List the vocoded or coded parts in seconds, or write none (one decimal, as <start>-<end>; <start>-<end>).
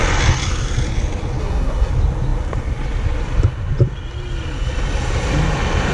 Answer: 1.4-1.9